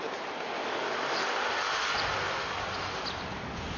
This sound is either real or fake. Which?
real